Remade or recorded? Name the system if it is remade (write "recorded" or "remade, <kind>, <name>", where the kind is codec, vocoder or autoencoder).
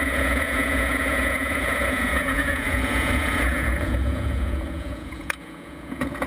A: remade, vocoder, Vocos